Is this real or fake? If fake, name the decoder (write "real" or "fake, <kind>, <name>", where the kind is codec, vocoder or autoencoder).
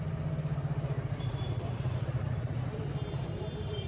real